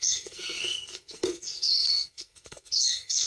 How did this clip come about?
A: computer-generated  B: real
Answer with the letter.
A